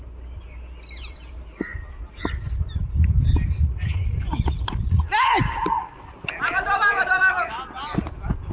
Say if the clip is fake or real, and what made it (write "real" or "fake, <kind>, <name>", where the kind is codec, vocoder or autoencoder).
real